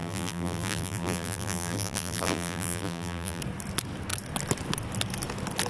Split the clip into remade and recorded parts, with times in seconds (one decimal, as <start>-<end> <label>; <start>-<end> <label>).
0.0-3.4 remade; 3.4-5.7 recorded